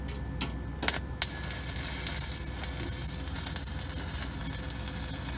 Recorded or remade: recorded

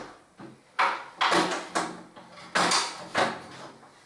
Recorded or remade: recorded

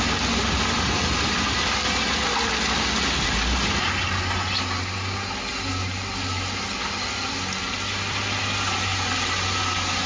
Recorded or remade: recorded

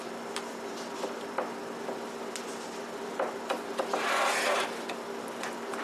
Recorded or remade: recorded